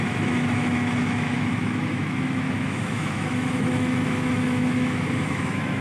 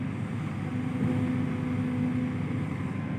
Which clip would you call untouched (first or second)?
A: second